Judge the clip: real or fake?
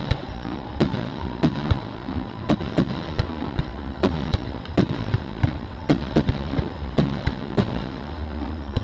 fake